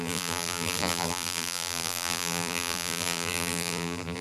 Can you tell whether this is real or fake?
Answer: fake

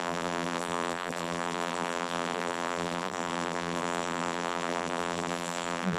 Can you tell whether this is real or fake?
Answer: fake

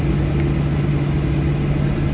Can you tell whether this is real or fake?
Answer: real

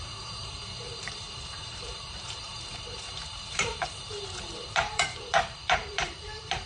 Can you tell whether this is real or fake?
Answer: fake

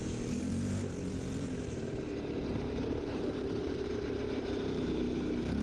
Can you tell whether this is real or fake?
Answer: fake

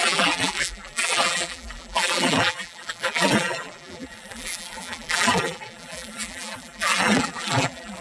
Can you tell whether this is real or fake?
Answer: fake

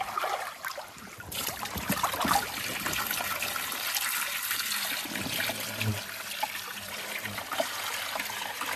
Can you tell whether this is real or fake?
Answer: real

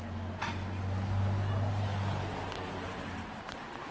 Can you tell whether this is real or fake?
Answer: real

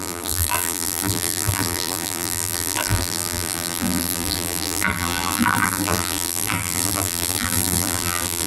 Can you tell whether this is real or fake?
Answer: fake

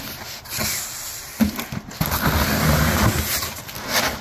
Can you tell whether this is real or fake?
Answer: real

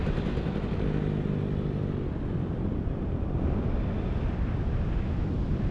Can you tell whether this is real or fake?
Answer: real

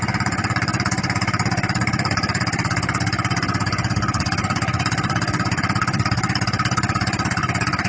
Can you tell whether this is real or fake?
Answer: fake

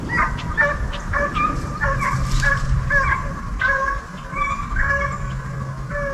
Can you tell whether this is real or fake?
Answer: real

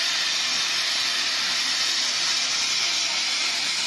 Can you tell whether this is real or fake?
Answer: real